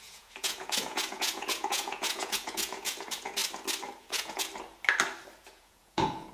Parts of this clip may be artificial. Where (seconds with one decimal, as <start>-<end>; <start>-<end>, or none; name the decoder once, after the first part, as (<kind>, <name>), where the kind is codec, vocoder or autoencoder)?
0.0-3.4 (vocoder, Vocos); 4.0-4.5; 5.5-6.3